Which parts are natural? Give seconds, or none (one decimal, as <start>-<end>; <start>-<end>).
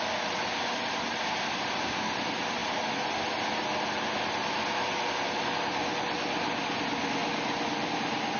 0.0-8.4